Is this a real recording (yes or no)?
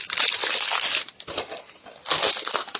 yes